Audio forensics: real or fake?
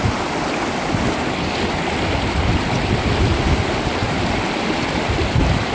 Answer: real